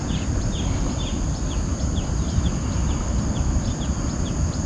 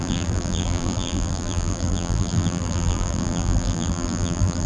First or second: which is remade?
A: second